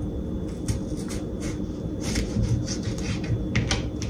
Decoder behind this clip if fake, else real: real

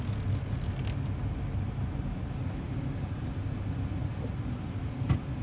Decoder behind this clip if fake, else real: real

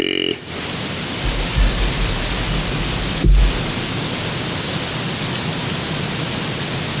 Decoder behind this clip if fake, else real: real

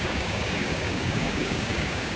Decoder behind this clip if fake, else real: fake, codec, DAC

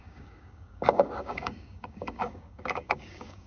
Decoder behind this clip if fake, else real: fake, codec, DAC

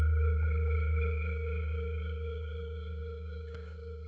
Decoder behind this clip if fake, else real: fake, codec, DAC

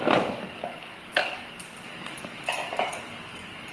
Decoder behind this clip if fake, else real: fake, codec, DAC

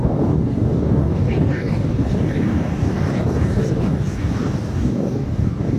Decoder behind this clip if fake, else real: fake, codec, DAC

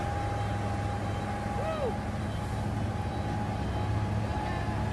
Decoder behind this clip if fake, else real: real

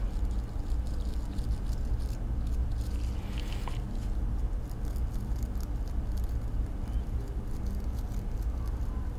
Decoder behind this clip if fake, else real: real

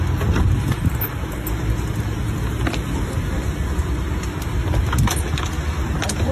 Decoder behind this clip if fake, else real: real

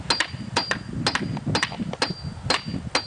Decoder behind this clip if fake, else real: real